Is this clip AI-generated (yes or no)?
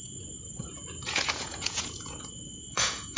yes